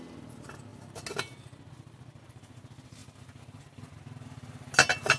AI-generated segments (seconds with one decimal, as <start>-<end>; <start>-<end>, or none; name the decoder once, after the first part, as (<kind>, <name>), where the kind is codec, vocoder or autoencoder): none